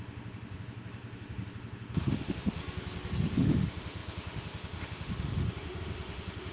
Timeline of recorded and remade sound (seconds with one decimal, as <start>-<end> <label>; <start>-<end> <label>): 0.0-2.6 remade; 2.6-3.4 recorded; 3.4-6.5 remade